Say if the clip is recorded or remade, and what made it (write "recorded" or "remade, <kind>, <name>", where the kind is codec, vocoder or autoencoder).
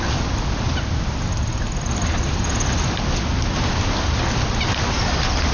recorded